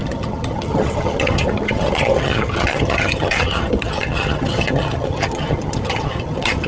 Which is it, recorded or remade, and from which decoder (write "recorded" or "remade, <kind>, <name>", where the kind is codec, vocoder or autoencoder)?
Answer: remade, vocoder, HiFi-GAN